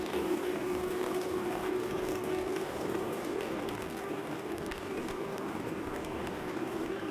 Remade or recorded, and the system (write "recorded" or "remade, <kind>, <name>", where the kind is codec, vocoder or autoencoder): remade, codec, DAC